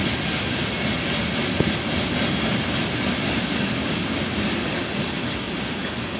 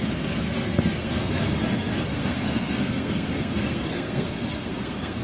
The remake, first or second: second